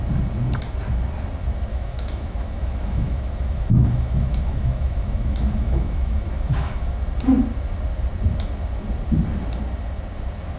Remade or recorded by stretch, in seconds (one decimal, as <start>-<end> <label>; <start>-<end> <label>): 0.0-1.7 recorded; 1.7-6.9 remade; 6.9-10.6 recorded